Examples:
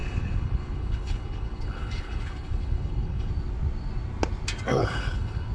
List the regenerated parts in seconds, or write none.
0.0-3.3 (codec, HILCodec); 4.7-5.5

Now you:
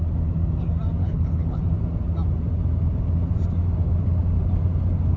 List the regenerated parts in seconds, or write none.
1.0-1.6 (codec, HILCodec)